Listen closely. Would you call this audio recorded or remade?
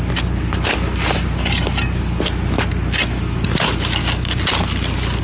recorded